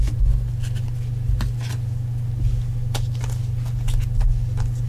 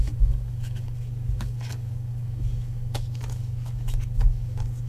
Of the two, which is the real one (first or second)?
first